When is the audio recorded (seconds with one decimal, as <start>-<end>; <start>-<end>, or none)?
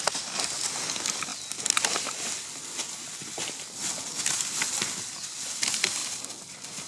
0.0-6.9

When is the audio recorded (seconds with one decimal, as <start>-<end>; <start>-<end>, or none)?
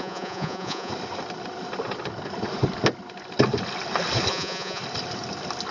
0.9-4.3; 4.8-5.7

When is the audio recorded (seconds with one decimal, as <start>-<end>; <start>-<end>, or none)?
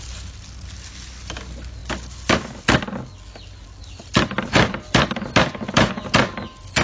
0.0-6.8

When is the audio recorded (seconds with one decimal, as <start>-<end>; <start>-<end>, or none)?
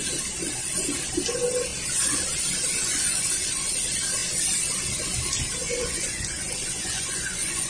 0.0-2.8; 3.7-5.6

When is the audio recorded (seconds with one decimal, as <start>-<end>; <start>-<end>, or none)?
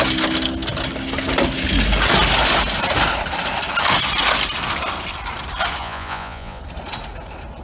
0.0-5.8; 6.6-7.6